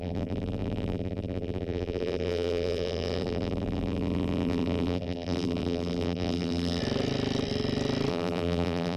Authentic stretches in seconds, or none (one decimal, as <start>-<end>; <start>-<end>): 6.8-8.1